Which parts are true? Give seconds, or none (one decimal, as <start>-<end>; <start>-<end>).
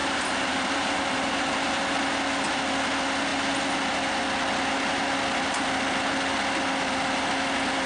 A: 1.7-7.9